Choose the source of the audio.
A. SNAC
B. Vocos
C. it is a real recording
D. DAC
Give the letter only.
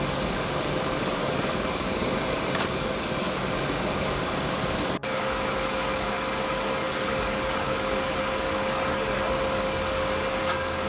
D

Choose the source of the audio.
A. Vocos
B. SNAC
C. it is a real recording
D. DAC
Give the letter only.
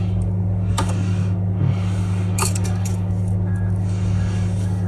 D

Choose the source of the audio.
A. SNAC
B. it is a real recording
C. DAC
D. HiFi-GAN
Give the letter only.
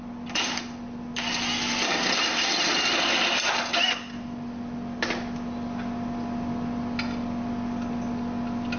B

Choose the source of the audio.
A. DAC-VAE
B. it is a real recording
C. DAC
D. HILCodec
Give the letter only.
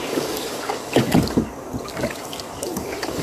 C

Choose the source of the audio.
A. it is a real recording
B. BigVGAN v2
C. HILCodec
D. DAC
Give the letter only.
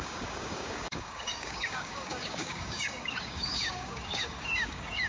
D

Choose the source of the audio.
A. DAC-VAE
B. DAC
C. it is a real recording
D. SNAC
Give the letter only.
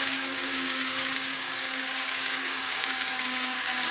B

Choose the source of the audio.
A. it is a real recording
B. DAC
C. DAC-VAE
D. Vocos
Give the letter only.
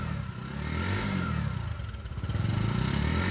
A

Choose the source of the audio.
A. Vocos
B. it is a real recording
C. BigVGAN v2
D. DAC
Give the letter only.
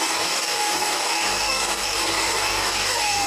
D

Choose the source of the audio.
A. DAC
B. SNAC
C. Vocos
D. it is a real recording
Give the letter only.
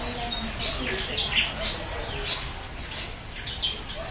D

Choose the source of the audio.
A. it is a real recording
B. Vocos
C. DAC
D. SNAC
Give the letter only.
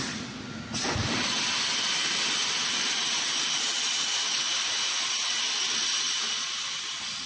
A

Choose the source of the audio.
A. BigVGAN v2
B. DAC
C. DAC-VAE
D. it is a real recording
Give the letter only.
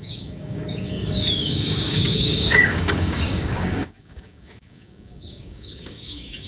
B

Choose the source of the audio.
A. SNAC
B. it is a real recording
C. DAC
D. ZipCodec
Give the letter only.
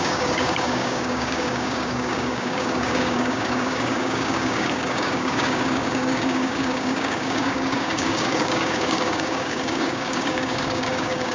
C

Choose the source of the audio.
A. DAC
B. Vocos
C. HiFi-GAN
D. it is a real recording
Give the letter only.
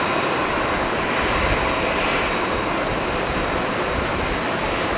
D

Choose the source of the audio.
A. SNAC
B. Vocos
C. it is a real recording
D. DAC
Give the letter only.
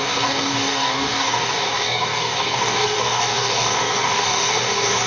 D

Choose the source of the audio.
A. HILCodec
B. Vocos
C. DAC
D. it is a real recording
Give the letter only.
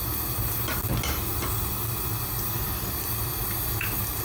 D